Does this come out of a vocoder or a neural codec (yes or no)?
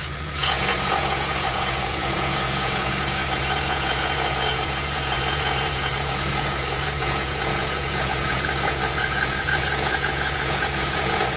yes